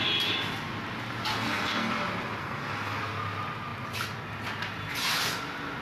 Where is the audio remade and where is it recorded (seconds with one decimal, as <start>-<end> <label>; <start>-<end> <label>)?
0.0-1.3 recorded; 1.3-1.9 remade; 1.9-2.4 recorded; 2.4-3.0 remade; 3.0-5.8 recorded